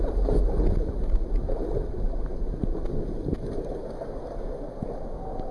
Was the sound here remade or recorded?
recorded